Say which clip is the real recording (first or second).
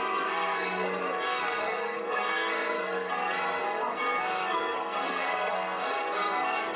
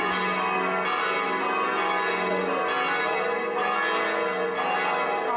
second